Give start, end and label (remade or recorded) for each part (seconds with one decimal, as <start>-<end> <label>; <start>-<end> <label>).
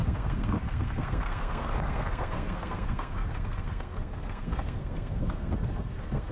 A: 0.0-6.3 remade